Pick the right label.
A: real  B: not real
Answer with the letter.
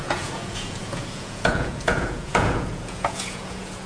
B